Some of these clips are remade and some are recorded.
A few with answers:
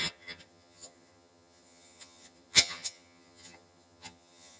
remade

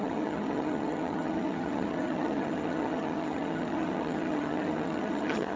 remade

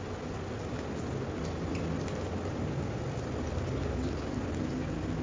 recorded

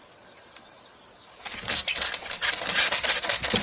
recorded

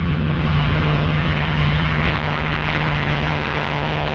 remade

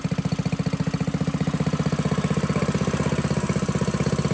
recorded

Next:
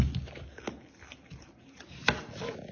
recorded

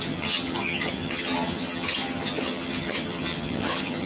remade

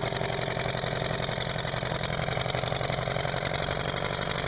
recorded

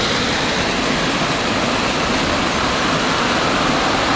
recorded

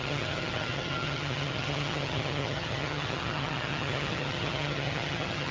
remade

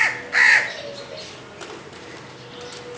recorded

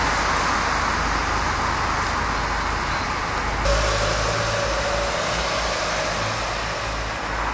recorded